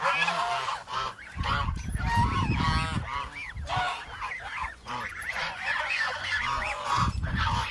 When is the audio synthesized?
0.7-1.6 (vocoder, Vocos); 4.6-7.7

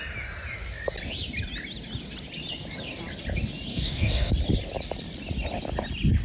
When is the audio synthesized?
3.7-4.3 (codec, DAC)

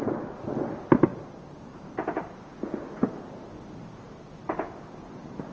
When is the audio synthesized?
1.1-2.3 (vocoder, BigVGAN v2); 4.4-5.5

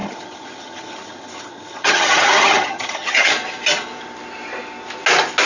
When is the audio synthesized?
0.0-3.3 (vocoder, HiFi-GAN)

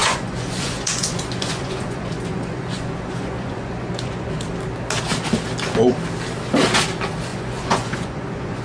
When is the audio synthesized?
0.0-4.3 (vocoder, Vocos); 7.3-8.6